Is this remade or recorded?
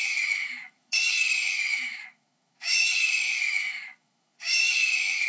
remade